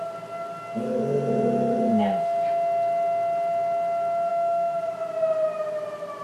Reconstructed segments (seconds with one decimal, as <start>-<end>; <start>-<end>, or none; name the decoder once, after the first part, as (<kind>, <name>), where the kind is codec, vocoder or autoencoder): 4.3-4.9 (autoencoder, DAC-VAE)